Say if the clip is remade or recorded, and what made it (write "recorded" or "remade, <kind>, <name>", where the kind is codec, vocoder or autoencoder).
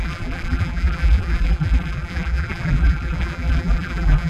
remade, vocoder, BigVGAN v2